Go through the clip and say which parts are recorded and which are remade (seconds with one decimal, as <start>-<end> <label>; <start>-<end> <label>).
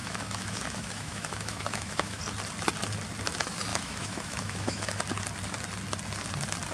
0.0-2.2 remade; 2.2-3.7 recorded; 3.7-5.0 remade; 5.0-6.7 recorded